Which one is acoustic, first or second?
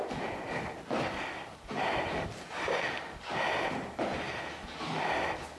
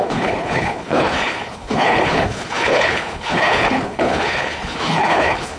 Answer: first